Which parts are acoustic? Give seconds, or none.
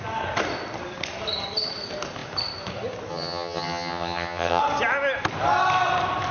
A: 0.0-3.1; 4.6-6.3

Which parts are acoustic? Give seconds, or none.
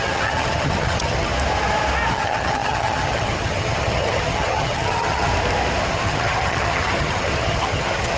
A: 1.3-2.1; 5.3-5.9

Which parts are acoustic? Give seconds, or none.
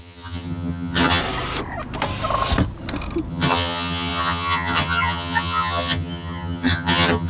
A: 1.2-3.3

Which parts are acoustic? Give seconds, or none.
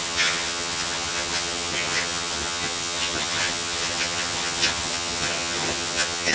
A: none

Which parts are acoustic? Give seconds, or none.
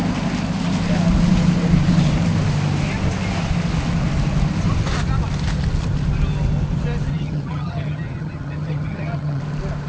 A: 0.0-7.1; 9.4-9.9